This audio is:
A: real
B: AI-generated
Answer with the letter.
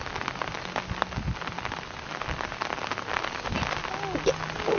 A